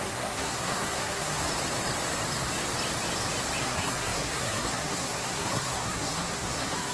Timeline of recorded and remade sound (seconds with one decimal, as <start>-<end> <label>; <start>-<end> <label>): 0.0-1.5 remade; 1.5-3.6 recorded; 3.6-6.9 remade